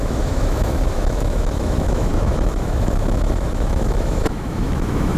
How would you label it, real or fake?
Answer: fake